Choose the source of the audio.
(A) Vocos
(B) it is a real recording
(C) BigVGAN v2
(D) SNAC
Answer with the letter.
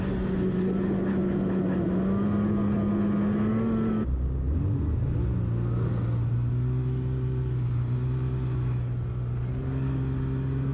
B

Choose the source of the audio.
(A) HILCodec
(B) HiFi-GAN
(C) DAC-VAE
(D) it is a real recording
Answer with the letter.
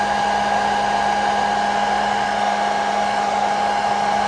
D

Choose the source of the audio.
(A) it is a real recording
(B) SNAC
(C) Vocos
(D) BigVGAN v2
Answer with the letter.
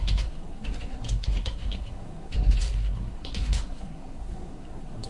B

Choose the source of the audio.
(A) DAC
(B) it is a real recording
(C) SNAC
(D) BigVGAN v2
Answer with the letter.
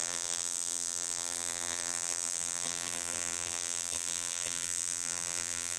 D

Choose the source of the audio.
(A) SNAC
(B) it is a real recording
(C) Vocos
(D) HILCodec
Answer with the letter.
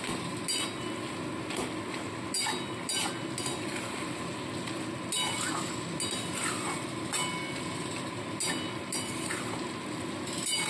B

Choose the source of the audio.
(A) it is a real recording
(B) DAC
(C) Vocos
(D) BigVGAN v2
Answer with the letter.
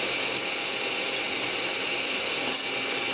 A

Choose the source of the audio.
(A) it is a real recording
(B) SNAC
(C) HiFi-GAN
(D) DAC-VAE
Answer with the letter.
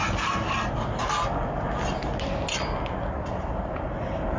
A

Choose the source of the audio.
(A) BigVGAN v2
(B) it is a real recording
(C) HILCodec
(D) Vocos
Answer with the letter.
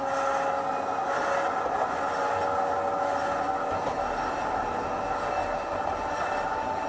B